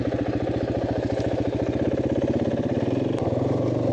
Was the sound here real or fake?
real